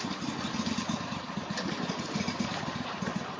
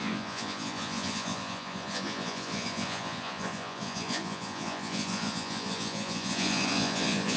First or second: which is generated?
second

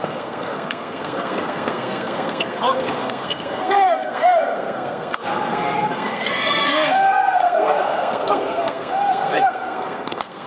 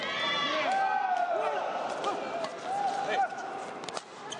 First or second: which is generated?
first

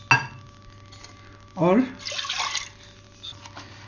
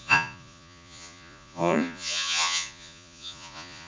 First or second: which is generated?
second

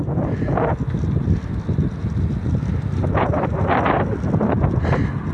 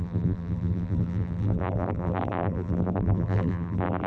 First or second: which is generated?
second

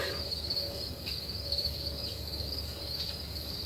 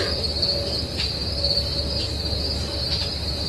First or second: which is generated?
first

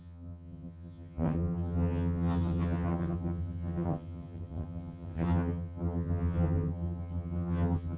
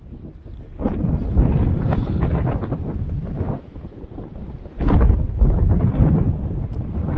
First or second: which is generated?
first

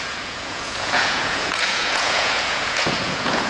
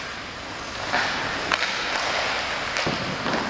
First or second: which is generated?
first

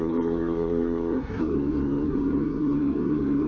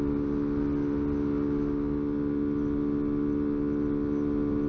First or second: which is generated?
first